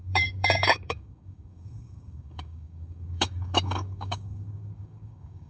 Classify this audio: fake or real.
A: fake